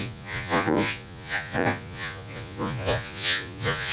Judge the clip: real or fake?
fake